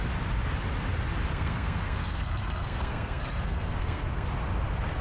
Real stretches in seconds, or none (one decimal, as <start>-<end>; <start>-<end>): 0.0-1.3; 4.3-5.0

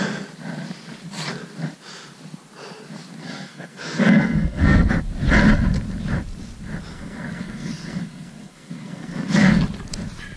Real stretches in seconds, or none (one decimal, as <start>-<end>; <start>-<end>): 0.0-3.2; 4.9-6.9; 9.6-10.4

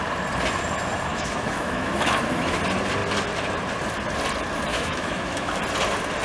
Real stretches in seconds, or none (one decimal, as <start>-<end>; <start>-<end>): 0.0-1.1; 2.6-4.7; 5.5-6.2

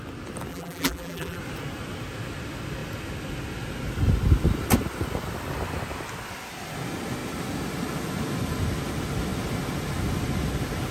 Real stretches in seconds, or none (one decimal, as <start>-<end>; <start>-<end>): 0.0-0.5; 1.4-10.9

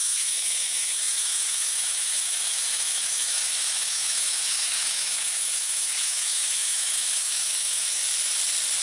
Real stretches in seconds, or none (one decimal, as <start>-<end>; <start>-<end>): 8.0-8.8